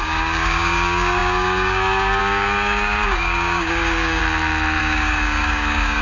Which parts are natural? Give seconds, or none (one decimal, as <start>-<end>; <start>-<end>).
4.2-4.8